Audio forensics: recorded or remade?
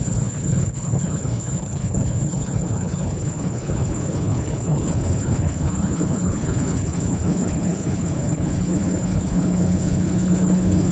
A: remade